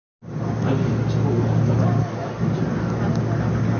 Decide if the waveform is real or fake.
real